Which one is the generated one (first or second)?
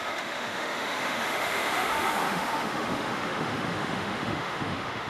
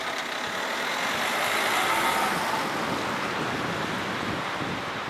first